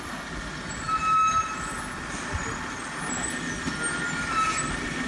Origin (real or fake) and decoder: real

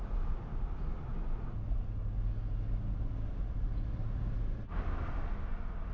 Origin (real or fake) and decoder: real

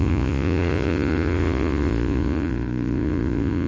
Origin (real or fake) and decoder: fake, vocoder, Vocos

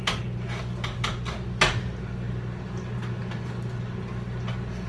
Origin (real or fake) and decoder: real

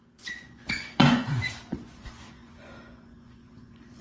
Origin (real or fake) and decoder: fake, vocoder, Vocos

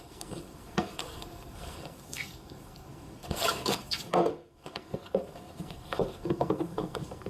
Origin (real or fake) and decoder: fake, codec, SNAC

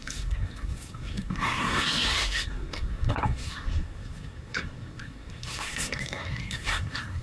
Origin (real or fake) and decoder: fake, codec, SNAC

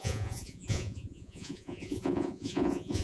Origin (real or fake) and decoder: fake, vocoder, Vocos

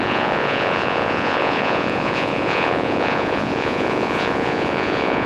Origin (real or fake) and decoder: fake, vocoder, Vocos